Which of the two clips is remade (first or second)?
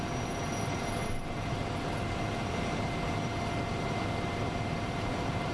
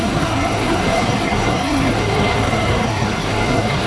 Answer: second